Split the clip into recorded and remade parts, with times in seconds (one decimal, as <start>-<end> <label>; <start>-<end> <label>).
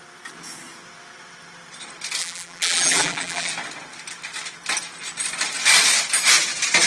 0.0-2.2 recorded; 2.2-3.5 remade; 3.5-6.9 recorded